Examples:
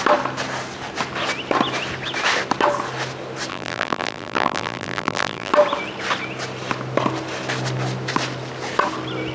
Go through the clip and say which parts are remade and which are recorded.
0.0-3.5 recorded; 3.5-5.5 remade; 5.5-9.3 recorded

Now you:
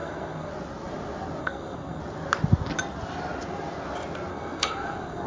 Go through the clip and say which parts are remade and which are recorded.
0.0-0.5 remade; 0.5-1.4 recorded; 1.4-2.0 remade; 2.0-4.3 recorded; 4.3-5.3 remade

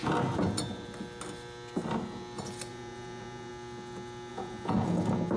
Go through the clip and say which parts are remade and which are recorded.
0.0-2.7 recorded; 2.7-3.5 remade; 3.5-4.3 recorded; 4.3-5.0 remade; 5.0-5.4 recorded